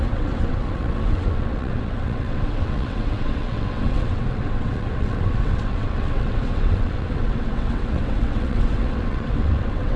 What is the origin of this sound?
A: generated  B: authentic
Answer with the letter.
A